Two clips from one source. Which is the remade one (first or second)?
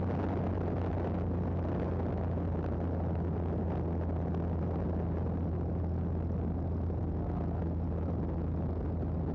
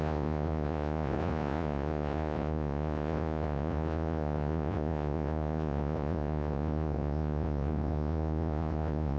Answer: second